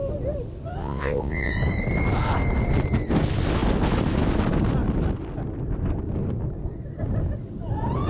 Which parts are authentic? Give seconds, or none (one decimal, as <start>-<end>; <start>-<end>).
0.0-0.8; 1.5-8.1